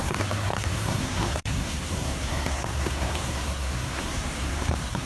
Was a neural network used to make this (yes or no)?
yes